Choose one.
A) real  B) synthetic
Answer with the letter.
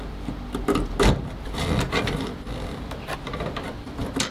A